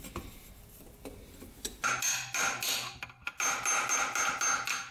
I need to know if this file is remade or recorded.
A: recorded